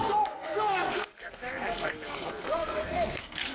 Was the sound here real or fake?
fake